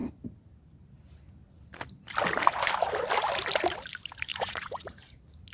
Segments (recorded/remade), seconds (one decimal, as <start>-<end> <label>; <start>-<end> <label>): 0.0-4.3 recorded; 4.3-5.0 remade; 5.0-5.5 recorded